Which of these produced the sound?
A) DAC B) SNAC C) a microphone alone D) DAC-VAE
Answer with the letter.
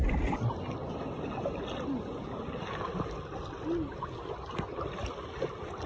C